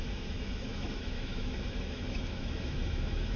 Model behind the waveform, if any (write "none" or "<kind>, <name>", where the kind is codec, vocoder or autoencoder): autoencoder, DAC-VAE